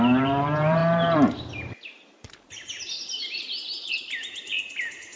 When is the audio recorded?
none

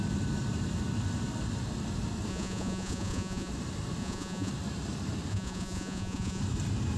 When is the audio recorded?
0.0-2.3; 3.5-4.0; 4.5-5.3; 6.4-7.0

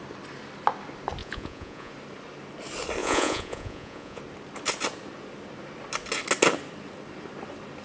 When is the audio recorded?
0.0-1.2; 1.9-3.0; 4.2-7.8